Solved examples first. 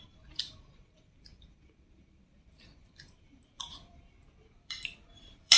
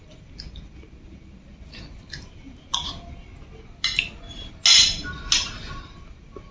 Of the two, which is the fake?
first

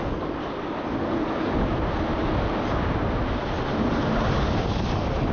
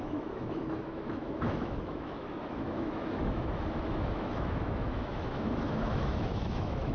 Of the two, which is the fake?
second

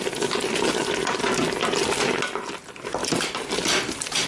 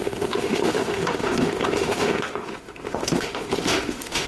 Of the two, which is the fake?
second